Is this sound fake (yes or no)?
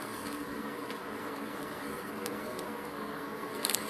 yes